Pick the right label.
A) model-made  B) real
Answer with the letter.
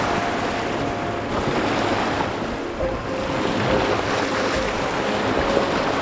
B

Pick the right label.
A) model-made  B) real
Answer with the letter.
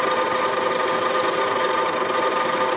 B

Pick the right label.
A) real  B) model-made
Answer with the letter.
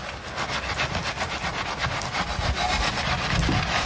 A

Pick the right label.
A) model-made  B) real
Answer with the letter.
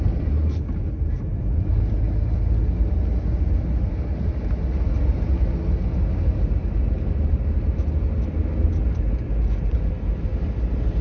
B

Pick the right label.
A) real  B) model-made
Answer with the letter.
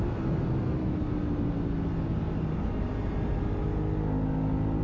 A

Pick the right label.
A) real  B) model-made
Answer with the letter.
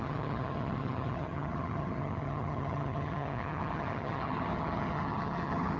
B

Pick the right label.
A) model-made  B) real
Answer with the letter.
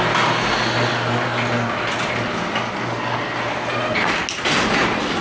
B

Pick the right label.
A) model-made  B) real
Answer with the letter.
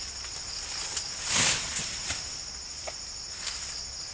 B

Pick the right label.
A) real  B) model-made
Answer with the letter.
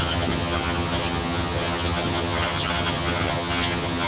B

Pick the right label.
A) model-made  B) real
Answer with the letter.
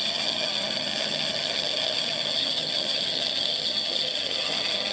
A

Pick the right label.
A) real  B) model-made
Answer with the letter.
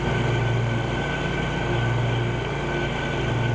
A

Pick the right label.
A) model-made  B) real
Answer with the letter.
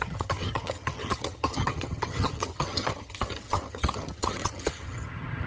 A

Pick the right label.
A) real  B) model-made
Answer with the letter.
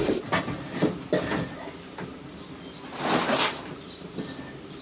A